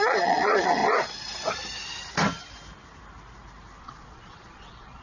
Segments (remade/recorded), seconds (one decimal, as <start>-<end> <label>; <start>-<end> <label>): 0.0-0.8 remade; 0.8-3.8 recorded; 3.8-5.0 remade